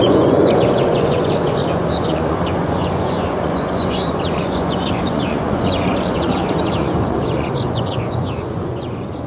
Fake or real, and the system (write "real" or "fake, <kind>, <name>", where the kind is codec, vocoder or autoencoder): fake, vocoder, Vocos